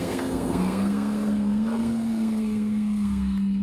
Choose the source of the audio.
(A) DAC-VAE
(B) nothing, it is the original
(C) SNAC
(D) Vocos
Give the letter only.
C